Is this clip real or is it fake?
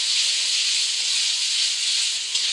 fake